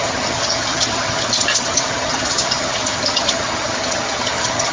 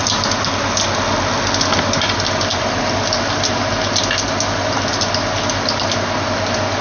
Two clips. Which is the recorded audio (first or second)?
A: second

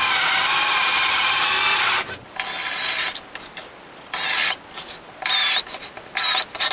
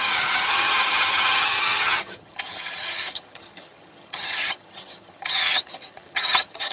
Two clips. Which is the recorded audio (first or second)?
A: first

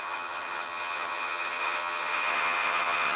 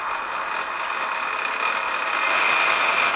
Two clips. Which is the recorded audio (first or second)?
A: second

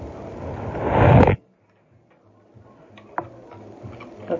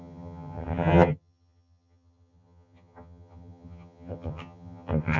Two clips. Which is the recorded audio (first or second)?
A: first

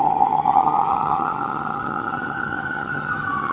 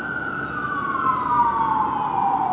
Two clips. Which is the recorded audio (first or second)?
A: second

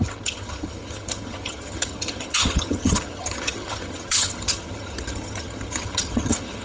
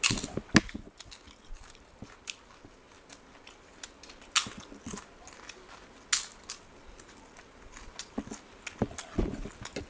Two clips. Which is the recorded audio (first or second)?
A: second